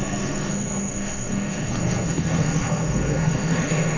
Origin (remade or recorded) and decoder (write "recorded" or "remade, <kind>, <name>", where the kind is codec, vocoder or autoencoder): remade, codec, SNAC